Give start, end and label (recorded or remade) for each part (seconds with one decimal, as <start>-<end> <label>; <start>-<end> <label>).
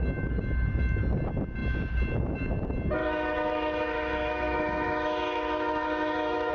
0.0-3.0 recorded; 3.0-6.5 remade